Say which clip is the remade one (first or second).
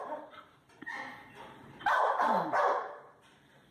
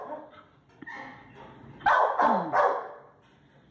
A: first